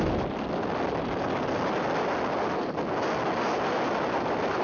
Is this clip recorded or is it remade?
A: recorded